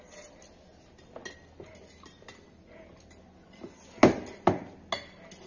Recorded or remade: recorded